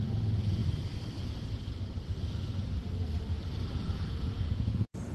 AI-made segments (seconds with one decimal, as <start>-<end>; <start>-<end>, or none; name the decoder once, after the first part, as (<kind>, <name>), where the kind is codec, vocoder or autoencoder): 0.0-0.6 (vocoder, Vocos); 3.7-5.1